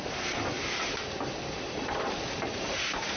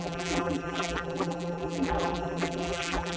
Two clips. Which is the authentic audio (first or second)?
first